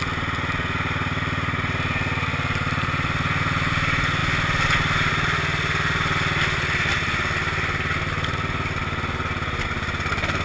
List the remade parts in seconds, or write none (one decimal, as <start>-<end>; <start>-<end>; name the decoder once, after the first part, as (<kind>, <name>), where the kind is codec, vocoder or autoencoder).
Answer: none